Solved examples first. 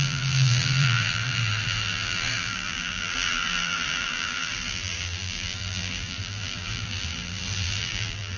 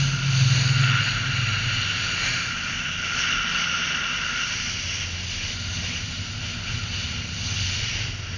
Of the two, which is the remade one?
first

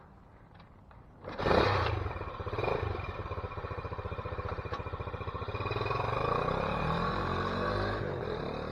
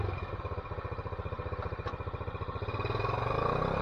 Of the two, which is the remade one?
first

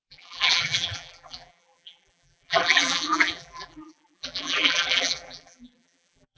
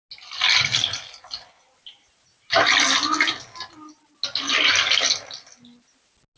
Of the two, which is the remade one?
first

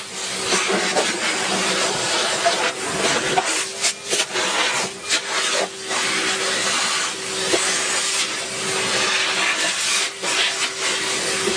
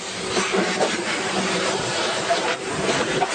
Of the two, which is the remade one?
second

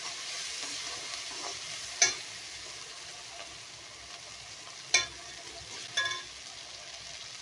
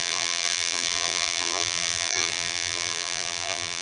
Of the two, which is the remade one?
second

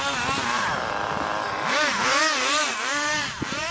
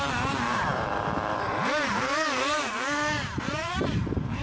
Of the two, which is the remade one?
second